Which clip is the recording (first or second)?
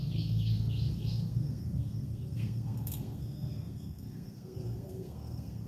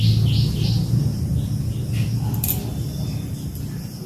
second